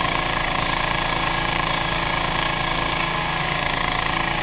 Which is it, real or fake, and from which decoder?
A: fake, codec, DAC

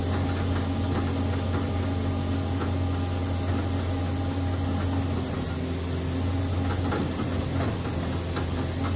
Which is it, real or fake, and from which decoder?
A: real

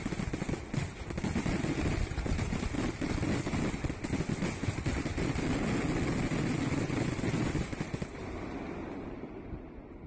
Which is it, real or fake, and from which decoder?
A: real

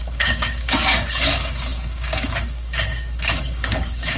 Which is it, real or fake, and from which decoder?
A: fake, codec, DAC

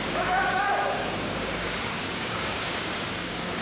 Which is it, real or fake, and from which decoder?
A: fake, codec, DAC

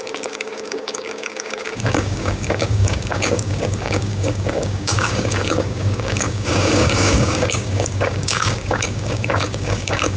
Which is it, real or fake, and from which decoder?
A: fake, codec, DAC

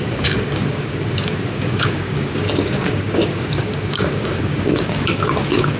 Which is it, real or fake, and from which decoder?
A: fake, codec, DAC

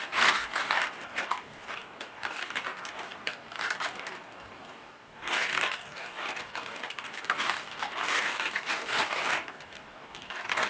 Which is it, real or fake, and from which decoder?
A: fake, codec, DAC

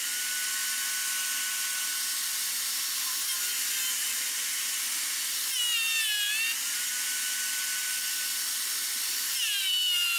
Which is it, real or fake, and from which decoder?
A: real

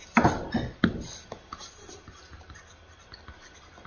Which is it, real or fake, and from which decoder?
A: real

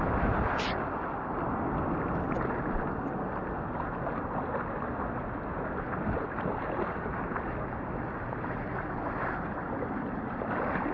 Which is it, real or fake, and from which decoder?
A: real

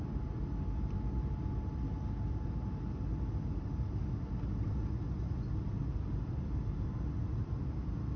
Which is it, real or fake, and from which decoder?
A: real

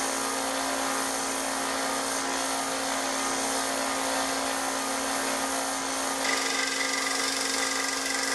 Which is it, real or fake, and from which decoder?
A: real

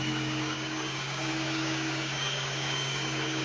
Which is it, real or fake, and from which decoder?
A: fake, codec, DAC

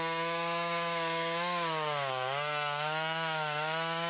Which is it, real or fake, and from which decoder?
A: fake, codec, DAC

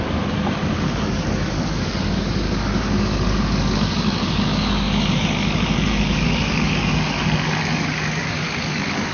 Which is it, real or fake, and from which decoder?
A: fake, codec, DAC